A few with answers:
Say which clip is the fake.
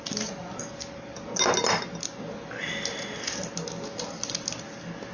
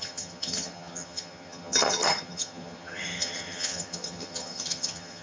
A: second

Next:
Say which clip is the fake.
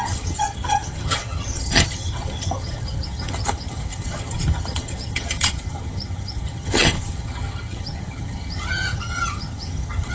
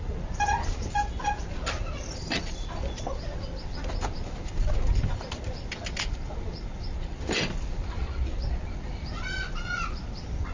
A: first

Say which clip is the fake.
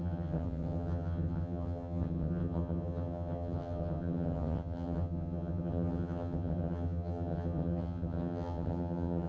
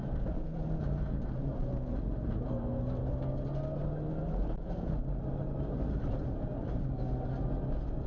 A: first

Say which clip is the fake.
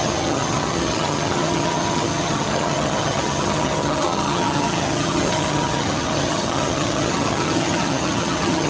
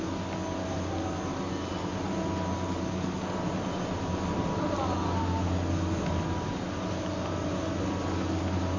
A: first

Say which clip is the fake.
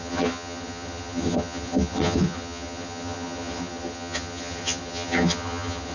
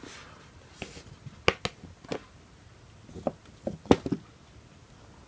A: first